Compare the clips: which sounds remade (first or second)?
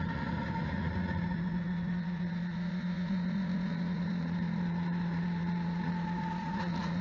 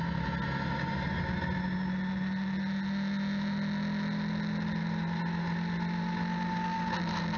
first